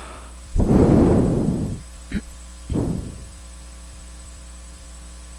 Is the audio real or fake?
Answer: fake